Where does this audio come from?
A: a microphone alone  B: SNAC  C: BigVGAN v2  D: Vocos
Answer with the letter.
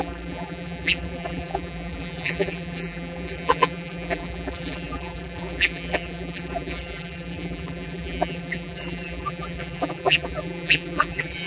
C